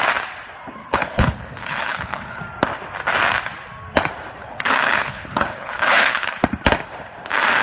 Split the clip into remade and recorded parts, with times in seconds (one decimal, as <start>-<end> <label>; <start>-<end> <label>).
0.0-0.8 recorded; 0.8-2.4 remade; 2.4-4.4 recorded; 4.4-6.4 remade; 6.4-7.6 recorded